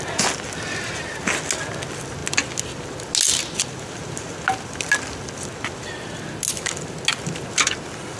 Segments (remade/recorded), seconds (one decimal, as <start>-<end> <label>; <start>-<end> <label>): 0.0-8.2 recorded